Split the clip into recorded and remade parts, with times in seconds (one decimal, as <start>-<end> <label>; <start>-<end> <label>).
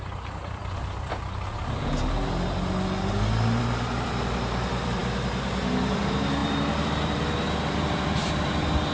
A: 0.0-0.6 remade; 0.6-3.6 recorded; 3.6-8.9 remade